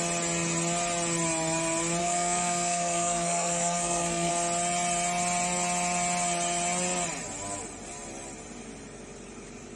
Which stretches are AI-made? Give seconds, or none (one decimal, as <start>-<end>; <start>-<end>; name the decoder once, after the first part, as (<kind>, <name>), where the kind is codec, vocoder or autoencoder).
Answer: 2.0-4.3 (codec, SNAC)